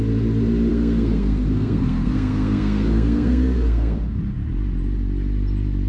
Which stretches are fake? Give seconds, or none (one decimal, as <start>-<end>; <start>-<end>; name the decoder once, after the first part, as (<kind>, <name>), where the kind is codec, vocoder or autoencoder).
0.7-4.2 (codec, SNAC)